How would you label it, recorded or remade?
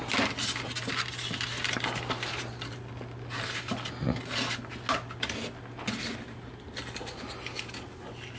recorded